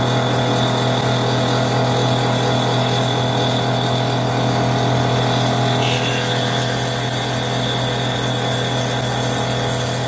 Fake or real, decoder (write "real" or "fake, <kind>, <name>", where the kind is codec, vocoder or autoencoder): real